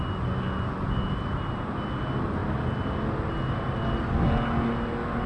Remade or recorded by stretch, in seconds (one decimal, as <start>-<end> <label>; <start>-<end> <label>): 0.0-5.3 recorded